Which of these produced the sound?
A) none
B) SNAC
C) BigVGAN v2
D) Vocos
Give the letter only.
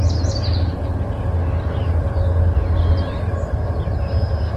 A